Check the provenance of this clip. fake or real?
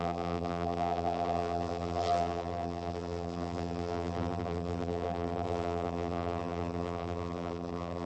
fake